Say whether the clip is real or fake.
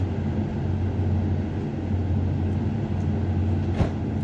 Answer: real